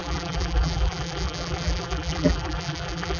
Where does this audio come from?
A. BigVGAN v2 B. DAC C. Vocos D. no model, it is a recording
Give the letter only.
A